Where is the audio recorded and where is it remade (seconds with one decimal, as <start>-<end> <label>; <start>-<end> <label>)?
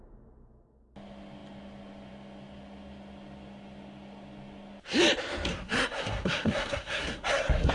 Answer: 0.0-5.5 recorded; 5.5-7.7 remade